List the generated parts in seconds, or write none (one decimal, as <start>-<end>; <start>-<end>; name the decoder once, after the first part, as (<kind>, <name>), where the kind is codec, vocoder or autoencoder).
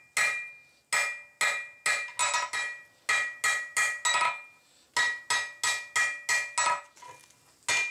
none